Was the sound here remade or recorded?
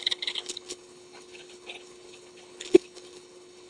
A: remade